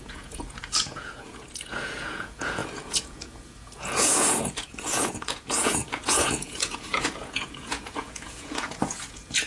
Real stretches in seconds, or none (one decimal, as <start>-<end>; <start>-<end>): none